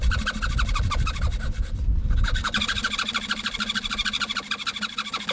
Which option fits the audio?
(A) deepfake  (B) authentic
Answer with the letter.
B